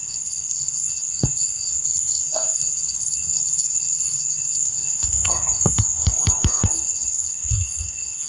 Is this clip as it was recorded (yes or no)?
no